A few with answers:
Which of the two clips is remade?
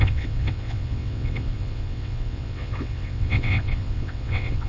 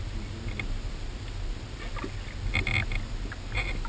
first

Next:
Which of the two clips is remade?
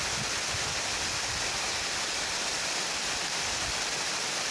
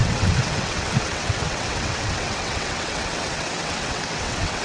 second